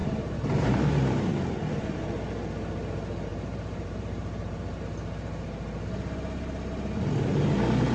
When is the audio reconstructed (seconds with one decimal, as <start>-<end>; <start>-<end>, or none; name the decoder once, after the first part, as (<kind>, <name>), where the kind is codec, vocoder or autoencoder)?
0.0-1.3 (vocoder, BigVGAN v2); 3.3-4.8